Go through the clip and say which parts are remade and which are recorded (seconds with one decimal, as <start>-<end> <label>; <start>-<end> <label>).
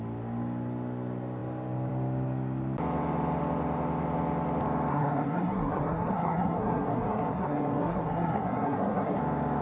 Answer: 0.0-4.9 recorded; 4.9-9.2 remade; 9.2-9.6 recorded